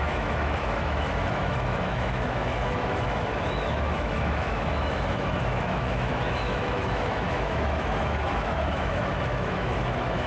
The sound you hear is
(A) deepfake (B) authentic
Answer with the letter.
A